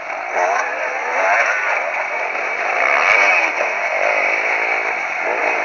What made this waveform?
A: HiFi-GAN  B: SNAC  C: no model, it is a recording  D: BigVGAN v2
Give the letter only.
C